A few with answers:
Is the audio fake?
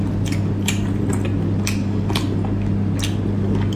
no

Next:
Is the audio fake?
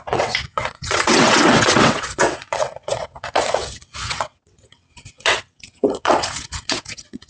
yes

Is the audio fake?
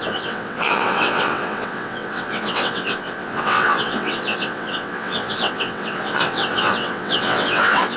yes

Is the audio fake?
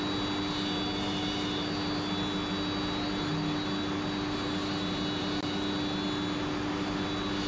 no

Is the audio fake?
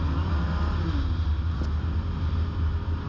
no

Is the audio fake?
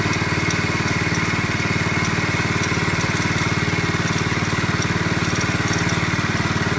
no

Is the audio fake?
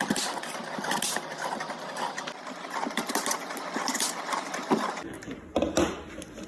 no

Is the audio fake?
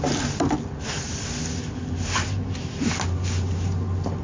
no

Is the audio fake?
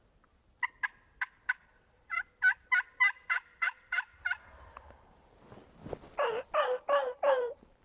no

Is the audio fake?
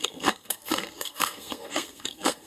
yes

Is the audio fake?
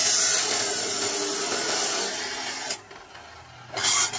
no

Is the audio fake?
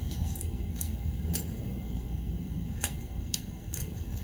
yes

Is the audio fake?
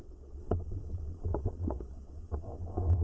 yes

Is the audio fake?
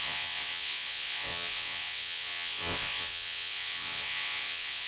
yes